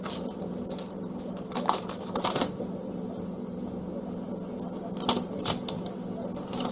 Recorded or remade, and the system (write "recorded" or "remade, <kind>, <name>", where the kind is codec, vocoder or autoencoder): recorded